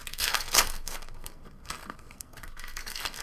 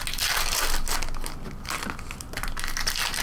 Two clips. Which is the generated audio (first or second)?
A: first